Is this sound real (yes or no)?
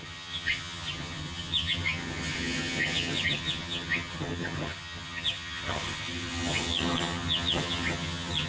no